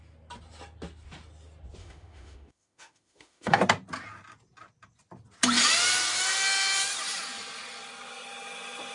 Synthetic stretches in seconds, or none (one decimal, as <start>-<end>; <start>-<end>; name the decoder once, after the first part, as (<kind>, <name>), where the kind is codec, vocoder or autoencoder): 1.8-3.6 (autoencoder, DAC-VAE)